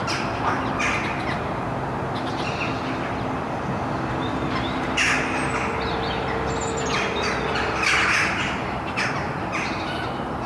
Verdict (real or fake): real